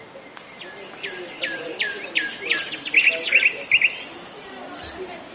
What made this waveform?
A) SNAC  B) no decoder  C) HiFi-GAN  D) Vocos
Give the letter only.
B